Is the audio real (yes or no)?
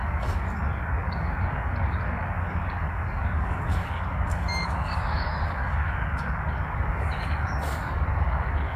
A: no